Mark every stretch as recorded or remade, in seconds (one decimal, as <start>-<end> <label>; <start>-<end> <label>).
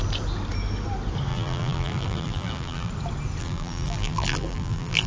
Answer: 0.0-1.3 recorded; 1.3-2.9 remade; 2.9-3.4 recorded; 3.4-5.1 remade